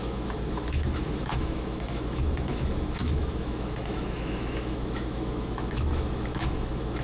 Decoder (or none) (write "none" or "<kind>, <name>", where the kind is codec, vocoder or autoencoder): autoencoder, DAC-VAE